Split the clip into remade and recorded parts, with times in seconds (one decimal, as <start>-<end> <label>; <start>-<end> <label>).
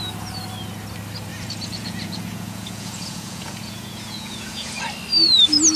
0.0-1.3 recorded; 1.3-4.8 remade; 4.8-5.8 recorded